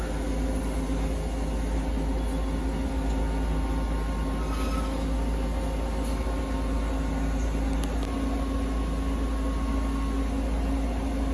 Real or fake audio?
real